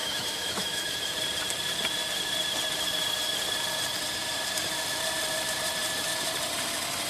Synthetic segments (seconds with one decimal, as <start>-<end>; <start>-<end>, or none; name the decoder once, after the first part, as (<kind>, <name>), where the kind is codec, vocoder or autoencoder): 0.0-0.9 (autoencoder, DAC-VAE)